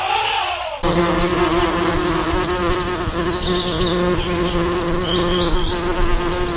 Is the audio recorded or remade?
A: recorded